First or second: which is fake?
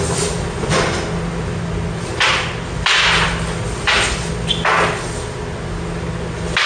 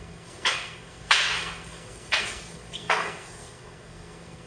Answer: second